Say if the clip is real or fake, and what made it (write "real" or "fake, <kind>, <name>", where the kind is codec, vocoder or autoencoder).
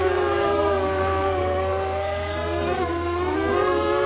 fake, codec, SNAC